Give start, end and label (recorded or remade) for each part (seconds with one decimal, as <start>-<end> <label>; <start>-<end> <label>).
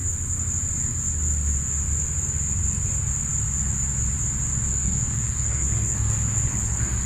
0.0-4.7 recorded; 4.7-7.1 remade